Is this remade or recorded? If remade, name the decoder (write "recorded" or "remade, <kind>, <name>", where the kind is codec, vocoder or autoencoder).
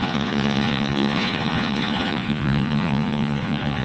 remade, vocoder, Vocos